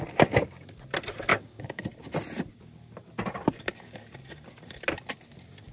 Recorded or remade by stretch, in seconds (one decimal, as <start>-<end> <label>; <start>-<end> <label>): 0.0-1.3 recorded; 1.3-1.8 remade; 1.8-5.7 recorded